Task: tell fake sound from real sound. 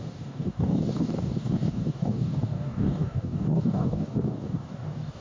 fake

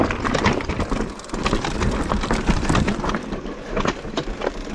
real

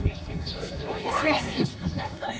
fake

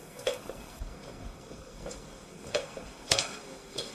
fake